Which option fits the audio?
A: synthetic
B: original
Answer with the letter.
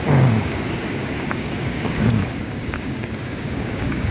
A